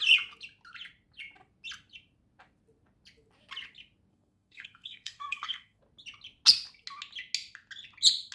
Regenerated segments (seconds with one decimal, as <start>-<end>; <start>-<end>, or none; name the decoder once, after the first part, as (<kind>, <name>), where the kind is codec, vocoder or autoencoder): 4.1-5.8 (codec, SNAC)